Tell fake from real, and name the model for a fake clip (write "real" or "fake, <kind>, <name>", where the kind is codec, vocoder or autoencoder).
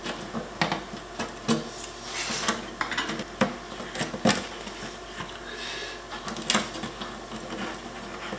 real